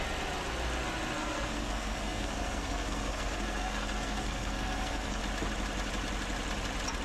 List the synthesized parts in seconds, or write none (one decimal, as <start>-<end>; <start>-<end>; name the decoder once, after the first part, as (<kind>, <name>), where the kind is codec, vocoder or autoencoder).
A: 1.2-5.2 (codec, SNAC)